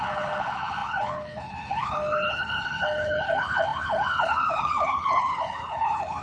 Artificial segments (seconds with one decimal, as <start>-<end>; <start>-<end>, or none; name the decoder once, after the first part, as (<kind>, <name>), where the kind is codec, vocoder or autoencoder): 0.0-6.2 (codec, HILCodec)